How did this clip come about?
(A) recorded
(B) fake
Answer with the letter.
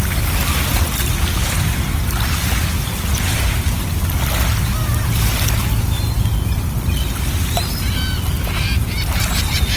A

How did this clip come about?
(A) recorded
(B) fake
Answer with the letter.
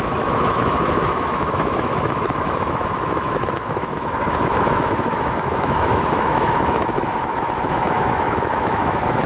B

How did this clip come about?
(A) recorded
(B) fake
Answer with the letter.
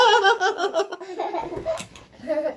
B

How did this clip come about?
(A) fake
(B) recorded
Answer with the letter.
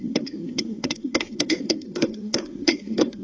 A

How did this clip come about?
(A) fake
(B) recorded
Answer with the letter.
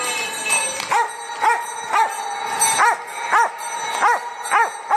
B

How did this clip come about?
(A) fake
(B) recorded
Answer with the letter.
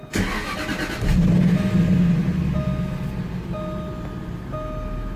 B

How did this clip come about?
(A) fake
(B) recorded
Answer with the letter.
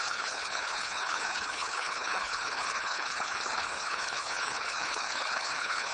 A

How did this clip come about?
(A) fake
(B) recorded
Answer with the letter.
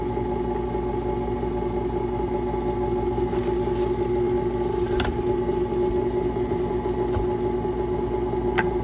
B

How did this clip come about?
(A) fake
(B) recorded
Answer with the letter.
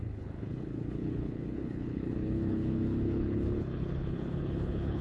A